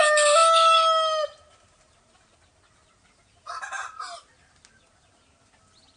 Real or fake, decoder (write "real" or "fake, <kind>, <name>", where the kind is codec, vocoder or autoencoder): real